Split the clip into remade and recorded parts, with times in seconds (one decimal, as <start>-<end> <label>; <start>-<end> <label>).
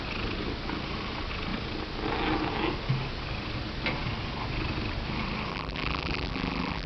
0.0-5.5 recorded; 5.5-6.9 remade